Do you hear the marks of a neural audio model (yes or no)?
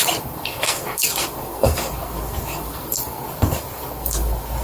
yes